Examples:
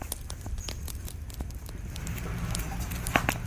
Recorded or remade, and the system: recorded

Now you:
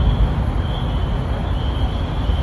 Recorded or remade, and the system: recorded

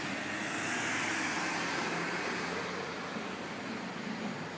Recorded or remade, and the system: recorded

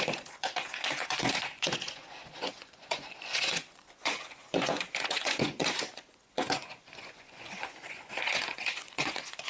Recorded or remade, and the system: remade, vocoder, Vocos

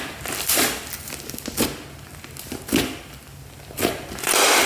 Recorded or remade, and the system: recorded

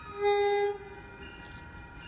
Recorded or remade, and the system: recorded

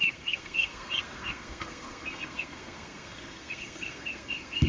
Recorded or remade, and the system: remade, codec, SNAC